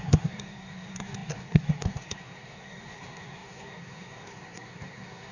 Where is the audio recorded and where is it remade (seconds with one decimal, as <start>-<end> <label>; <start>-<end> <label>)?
0.0-5.3 remade